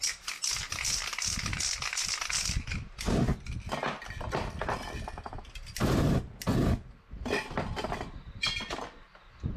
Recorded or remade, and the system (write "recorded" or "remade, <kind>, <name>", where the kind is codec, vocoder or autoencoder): recorded